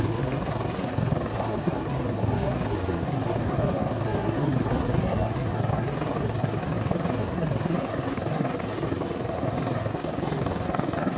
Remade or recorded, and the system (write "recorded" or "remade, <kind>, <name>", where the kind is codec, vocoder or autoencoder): remade, codec, SNAC